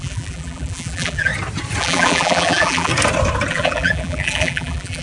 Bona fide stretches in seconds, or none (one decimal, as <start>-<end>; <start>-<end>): 1.3-1.8; 2.9-3.5